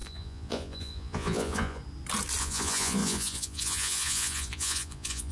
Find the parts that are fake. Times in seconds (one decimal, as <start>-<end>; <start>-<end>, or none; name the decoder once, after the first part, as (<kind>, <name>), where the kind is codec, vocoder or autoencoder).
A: 0.0-1.8 (vocoder, Vocos); 2.4-5.3